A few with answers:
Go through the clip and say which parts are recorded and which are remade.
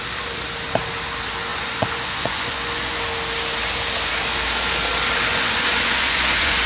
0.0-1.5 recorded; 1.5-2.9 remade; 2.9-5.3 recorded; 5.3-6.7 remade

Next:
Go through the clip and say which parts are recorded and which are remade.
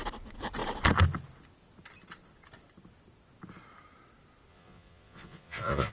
0.0-4.5 recorded; 4.5-5.9 remade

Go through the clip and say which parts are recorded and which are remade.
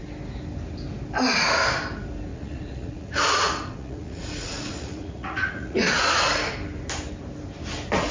0.0-2.3 recorded; 2.3-6.2 remade; 6.2-8.1 recorded